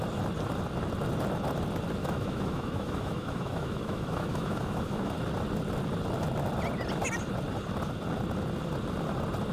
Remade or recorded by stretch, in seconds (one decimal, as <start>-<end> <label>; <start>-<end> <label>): 0.0-2.0 recorded; 2.0-5.1 remade; 5.1-9.5 recorded